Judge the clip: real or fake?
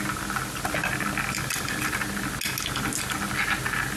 real